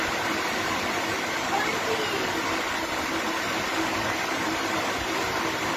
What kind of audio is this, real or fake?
fake